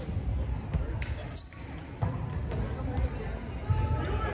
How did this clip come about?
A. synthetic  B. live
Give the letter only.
B